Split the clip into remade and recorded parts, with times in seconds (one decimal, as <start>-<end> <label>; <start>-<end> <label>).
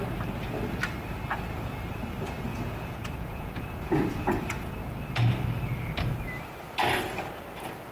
0.0-2.5 recorded; 2.5-4.7 remade; 4.7-7.9 recorded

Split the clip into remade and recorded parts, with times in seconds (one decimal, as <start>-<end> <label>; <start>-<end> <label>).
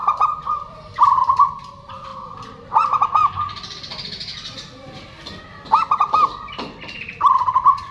0.0-7.9 remade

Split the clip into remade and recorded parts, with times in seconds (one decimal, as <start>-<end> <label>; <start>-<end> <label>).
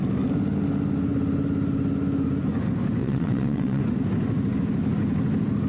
0.0-3.0 recorded; 3.0-3.8 remade; 3.8-5.7 recorded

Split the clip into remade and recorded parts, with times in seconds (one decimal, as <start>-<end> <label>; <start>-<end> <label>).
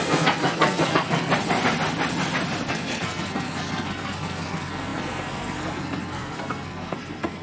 0.0-1.3 remade; 1.3-2.7 recorded; 2.7-7.4 remade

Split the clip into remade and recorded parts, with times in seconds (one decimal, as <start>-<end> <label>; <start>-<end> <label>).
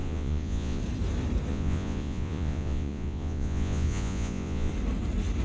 0.0-0.8 remade; 0.8-1.5 recorded; 1.5-4.7 remade; 4.7-5.4 recorded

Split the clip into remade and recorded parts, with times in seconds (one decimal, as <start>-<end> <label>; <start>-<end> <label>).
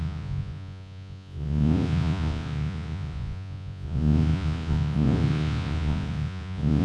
0.0-6.8 remade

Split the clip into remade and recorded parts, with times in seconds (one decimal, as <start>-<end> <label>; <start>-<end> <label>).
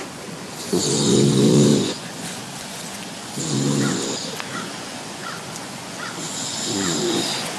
0.0-7.6 remade